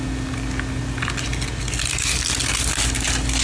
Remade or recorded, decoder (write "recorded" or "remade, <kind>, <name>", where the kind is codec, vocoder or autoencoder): recorded